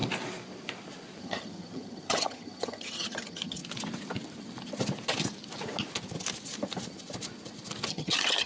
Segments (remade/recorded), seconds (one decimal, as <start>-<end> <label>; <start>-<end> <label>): 0.0-1.2 recorded; 1.2-3.6 remade; 3.6-7.9 recorded; 7.9-8.5 remade